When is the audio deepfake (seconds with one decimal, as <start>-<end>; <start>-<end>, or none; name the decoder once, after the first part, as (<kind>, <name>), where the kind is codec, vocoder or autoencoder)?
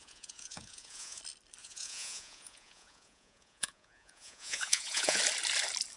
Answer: 0.0-1.2 (vocoder, Vocos); 1.6-5.2